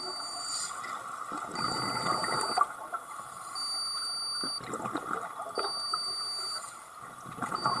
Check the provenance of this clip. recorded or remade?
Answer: recorded